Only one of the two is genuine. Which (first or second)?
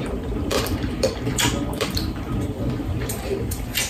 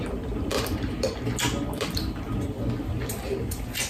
second